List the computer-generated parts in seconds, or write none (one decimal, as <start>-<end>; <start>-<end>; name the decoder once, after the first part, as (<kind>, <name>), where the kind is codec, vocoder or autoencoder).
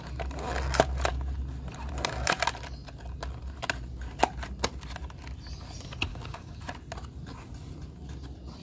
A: 6.1-6.6 (codec, DAC)